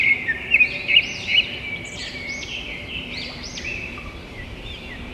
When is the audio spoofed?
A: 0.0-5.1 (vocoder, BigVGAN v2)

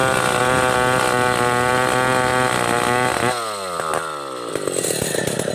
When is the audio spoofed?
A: none

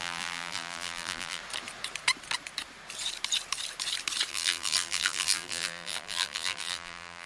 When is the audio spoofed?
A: 0.0-1.4 (vocoder, BigVGAN v2); 4.3-7.3

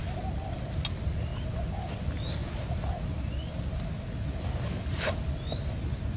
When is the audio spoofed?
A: 1.3-1.9 (vocoder, BigVGAN v2); 4.7-5.3

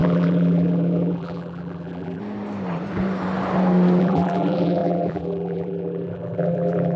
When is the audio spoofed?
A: 0.0-2.2 (vocoder, BigVGAN v2); 4.0-7.0